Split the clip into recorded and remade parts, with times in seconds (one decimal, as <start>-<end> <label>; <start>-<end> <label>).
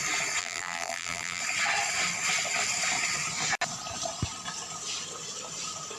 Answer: 0.0-0.4 recorded; 0.4-1.4 remade; 1.4-6.0 recorded